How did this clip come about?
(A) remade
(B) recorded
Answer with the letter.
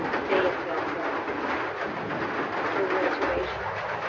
B